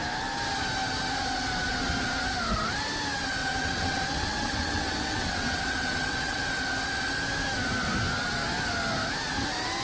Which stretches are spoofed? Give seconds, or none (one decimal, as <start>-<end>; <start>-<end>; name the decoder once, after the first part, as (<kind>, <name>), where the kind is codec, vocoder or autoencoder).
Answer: 3.4-6.4 (vocoder, WaveNeXt)